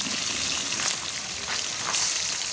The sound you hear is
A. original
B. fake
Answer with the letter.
A